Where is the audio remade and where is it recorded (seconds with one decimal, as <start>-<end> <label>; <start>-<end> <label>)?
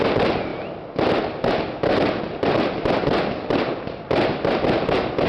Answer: 0.0-5.3 recorded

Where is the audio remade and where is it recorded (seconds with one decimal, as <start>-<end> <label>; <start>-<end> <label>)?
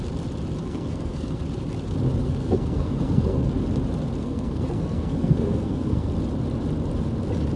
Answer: 0.0-0.6 recorded; 0.6-1.4 remade; 1.4-2.2 recorded; 2.2-3.5 remade; 3.5-4.2 recorded; 4.2-6.1 remade; 6.1-7.6 recorded